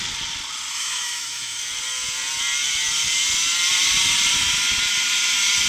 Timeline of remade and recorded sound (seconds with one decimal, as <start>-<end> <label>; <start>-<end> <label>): 0.0-0.7 recorded; 0.7-1.6 remade; 1.6-5.7 recorded

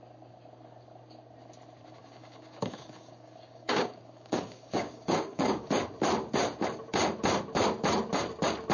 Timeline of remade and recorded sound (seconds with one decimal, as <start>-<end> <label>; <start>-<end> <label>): 0.0-2.0 recorded; 2.0-5.8 remade; 5.8-8.7 recorded

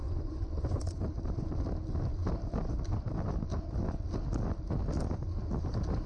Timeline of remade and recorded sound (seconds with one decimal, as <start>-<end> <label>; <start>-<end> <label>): 0.0-0.8 remade; 0.8-6.1 recorded

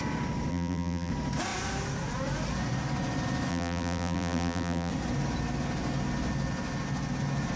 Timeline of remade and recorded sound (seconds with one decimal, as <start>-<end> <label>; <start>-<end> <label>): 0.0-0.5 recorded; 0.5-1.1 remade; 1.1-3.5 recorded; 3.5-4.9 remade; 4.9-7.6 recorded